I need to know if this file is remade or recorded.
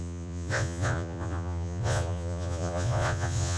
remade